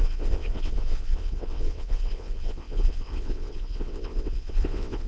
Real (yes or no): no